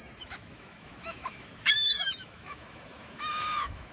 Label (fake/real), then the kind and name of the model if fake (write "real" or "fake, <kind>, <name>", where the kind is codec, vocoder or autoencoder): fake, autoencoder, DAC-VAE